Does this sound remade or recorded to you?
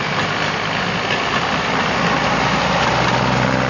recorded